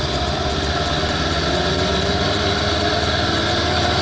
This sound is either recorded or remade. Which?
recorded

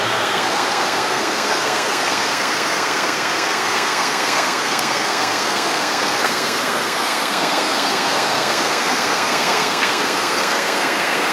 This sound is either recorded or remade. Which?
remade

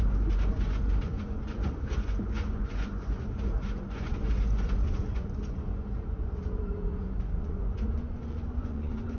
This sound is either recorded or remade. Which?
remade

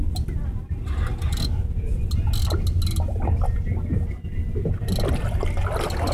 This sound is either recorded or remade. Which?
recorded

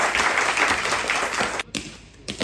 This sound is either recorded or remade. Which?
recorded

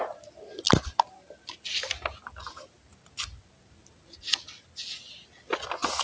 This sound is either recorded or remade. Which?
recorded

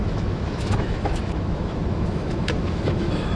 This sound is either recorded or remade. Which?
remade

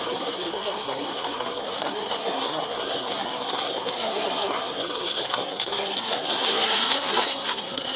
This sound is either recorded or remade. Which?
remade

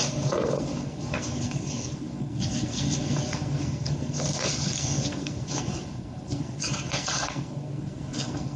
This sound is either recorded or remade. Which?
remade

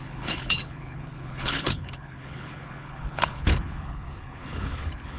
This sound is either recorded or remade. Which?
remade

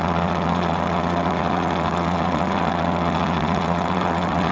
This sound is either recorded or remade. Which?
remade